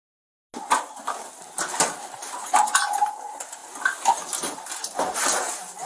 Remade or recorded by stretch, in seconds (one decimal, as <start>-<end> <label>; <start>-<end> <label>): 0.0-5.9 recorded